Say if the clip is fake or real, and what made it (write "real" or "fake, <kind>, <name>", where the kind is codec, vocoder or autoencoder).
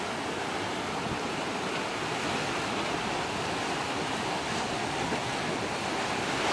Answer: real